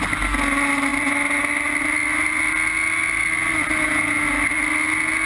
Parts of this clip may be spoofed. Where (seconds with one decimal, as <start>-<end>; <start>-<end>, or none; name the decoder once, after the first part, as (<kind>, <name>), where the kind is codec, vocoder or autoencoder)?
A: none